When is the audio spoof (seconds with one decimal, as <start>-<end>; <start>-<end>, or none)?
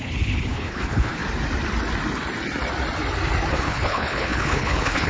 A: 0.0-1.2; 3.5-5.1